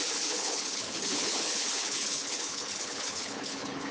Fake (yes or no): yes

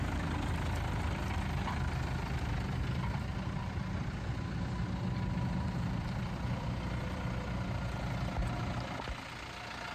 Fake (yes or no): no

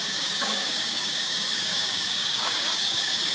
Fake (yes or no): yes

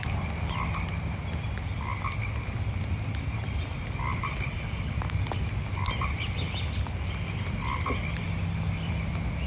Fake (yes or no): no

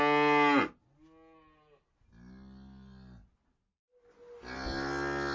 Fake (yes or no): no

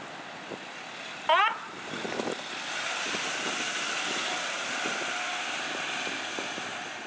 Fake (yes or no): no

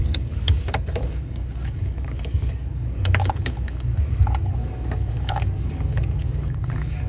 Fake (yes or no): yes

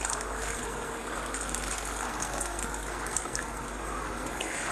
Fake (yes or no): yes